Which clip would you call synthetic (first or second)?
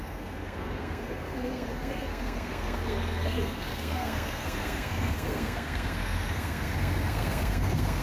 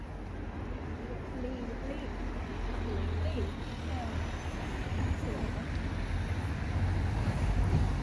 first